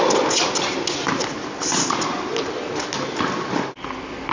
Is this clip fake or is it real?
real